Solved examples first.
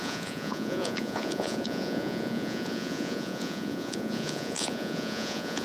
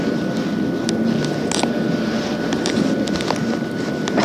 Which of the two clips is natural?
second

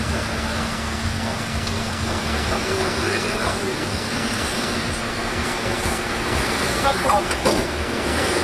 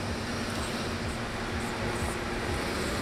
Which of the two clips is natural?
second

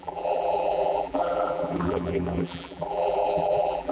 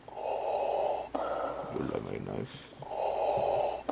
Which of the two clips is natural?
second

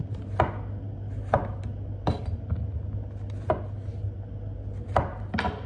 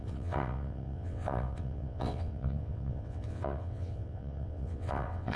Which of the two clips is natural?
first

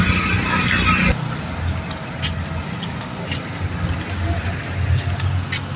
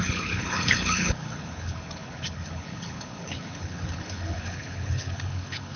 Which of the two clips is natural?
first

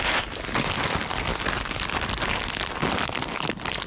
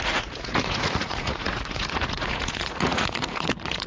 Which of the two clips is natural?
first